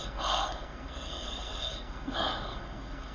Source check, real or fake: fake